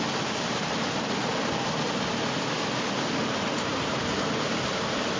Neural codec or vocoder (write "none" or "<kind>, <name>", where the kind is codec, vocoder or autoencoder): none